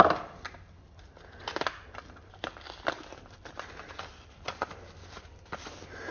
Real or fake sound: real